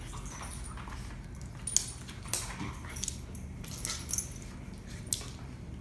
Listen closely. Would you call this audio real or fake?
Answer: real